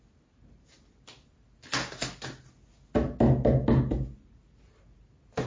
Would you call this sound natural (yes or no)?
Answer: yes